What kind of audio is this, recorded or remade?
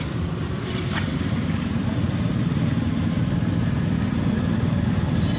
recorded